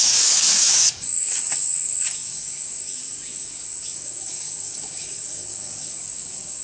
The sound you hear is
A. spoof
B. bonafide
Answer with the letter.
A